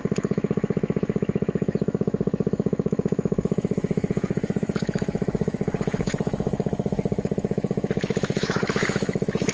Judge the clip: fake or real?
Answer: fake